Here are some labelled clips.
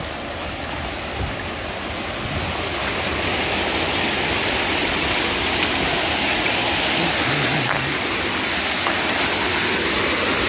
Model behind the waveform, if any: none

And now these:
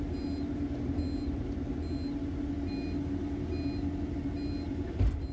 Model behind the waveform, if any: none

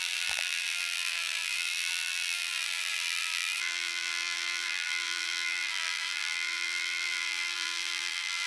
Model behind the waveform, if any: vocoder, BigVGAN v2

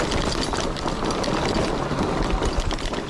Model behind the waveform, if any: none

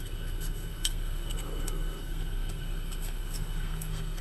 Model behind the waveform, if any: codec, SNAC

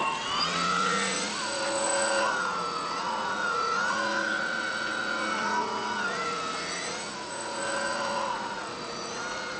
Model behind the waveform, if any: vocoder, Vocos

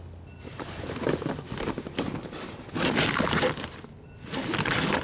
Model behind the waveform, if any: none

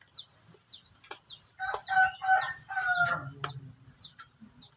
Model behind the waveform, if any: none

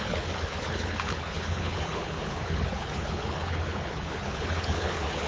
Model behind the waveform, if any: codec, HILCodec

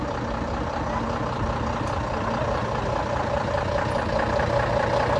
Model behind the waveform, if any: none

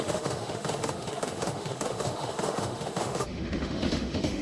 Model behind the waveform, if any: autoencoder, DAC-VAE